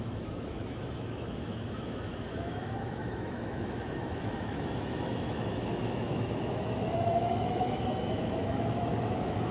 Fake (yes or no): yes